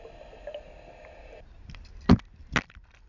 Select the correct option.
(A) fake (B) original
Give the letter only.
B